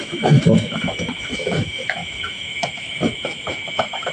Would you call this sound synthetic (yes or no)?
yes